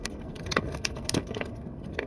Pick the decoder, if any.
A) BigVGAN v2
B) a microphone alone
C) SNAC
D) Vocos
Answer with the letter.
C